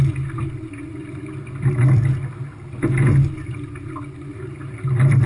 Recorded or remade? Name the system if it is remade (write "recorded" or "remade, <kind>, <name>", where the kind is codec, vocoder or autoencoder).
recorded